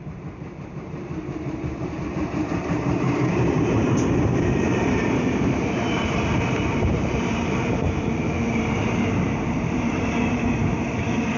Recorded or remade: remade